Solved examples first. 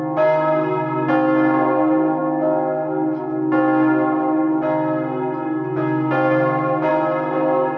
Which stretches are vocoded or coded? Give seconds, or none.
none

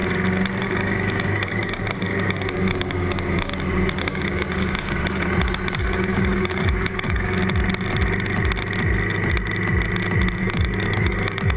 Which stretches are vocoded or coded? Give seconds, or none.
0.6-3.5 (codec, DAC); 4.0-5.0; 5.7-7.4; 10.4-11.6

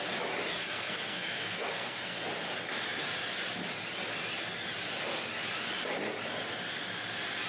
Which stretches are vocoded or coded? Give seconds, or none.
0.5-2.2 (codec, SNAC)